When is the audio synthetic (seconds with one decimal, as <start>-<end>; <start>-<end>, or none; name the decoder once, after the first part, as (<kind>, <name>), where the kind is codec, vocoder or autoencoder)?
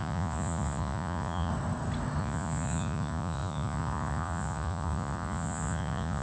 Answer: 0.0-1.5 (vocoder, Vocos); 2.2-6.2